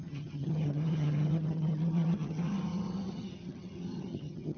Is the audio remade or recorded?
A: remade